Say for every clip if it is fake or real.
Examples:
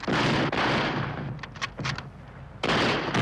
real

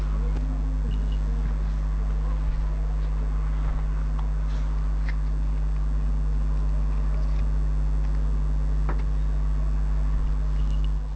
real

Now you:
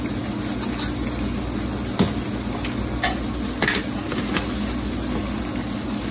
real